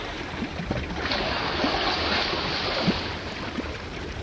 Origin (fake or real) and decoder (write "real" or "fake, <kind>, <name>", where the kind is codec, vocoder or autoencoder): real